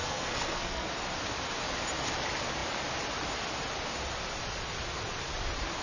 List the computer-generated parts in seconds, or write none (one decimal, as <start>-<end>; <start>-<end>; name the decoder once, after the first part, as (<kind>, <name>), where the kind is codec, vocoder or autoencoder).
0.0-0.9 (codec, SNAC)